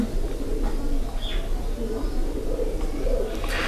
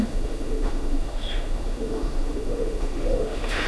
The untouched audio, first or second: first